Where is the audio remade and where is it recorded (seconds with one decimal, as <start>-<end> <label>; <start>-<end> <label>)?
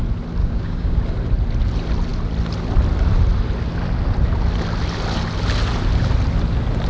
0.0-0.4 recorded; 0.4-1.0 remade; 1.0-6.9 recorded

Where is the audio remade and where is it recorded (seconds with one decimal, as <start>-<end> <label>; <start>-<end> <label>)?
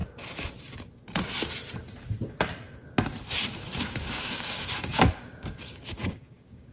0.0-3.8 recorded; 3.8-6.7 remade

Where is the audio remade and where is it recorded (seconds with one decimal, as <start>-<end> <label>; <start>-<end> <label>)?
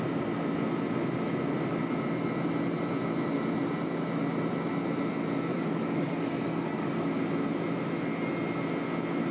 0.0-5.5 recorded; 5.5-7.2 remade; 7.2-9.3 recorded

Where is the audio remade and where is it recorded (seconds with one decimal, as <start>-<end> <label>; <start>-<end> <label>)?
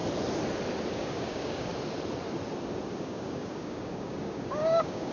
0.0-0.9 recorded; 0.9-1.7 remade; 1.7-2.9 recorded; 2.9-5.1 remade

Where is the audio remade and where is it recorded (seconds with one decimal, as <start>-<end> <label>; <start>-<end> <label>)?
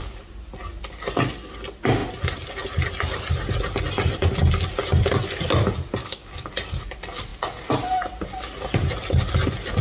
0.0-6.0 recorded; 6.0-6.5 remade; 6.5-9.8 recorded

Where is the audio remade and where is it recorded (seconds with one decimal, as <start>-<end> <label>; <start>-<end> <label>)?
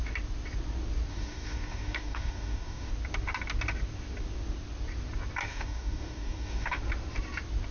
0.0-1.1 recorded; 1.1-2.9 remade; 2.9-5.5 recorded; 5.5-6.8 remade; 6.8-7.7 recorded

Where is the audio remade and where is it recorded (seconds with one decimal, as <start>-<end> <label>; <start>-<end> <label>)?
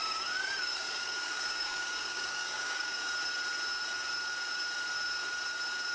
0.0-3.1 remade; 3.1-5.9 recorded